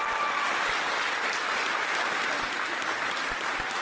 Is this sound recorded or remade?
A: recorded